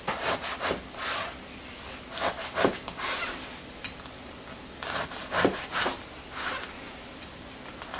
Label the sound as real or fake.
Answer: real